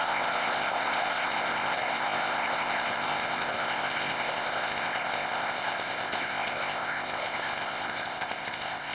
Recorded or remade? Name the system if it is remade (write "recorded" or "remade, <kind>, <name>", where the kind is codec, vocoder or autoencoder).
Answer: remade, codec, ZipCodec